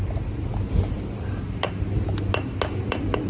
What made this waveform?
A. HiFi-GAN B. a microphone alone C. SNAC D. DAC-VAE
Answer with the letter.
B